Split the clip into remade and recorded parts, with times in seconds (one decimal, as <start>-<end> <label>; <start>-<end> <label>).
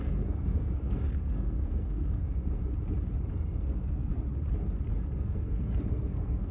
0.0-2.6 remade; 2.6-3.3 recorded; 3.3-4.1 remade; 4.1-5.0 recorded; 5.0-6.5 remade